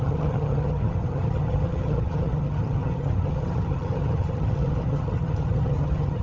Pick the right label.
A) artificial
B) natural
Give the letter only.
A